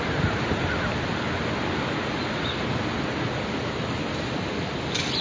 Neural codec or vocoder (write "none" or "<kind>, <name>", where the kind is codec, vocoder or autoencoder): none